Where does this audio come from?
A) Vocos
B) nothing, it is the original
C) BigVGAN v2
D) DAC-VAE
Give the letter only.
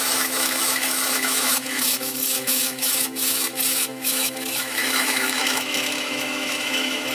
D